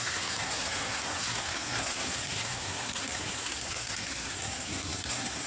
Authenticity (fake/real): fake